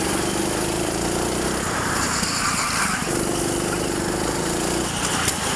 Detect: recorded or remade recorded